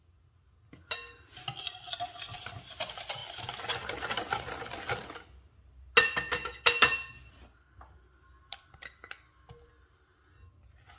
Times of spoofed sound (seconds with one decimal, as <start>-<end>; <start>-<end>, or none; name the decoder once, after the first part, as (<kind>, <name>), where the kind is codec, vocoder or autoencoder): none